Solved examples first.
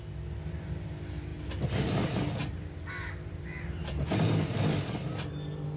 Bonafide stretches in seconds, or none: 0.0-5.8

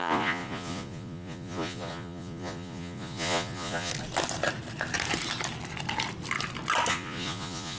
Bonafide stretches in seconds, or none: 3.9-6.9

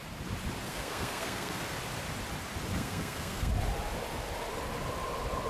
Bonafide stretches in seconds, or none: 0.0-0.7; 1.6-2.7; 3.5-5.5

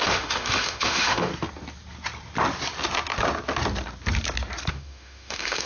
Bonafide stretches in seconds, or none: 1.3-4.7

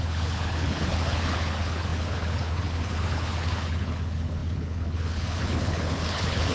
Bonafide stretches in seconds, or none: none

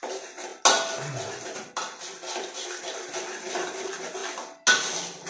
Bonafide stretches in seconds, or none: 0.0-5.3